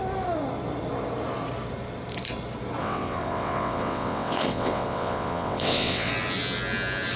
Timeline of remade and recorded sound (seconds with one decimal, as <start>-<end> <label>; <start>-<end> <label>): 0.0-2.8 recorded; 2.8-6.1 remade; 6.1-7.2 recorded